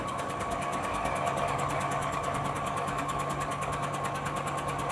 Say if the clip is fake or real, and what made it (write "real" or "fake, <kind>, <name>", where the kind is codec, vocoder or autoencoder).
fake, codec, DAC